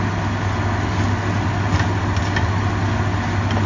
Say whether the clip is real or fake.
real